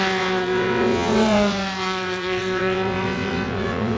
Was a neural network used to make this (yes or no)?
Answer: yes